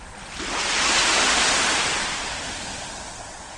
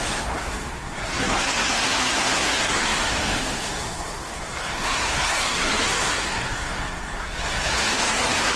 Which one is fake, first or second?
second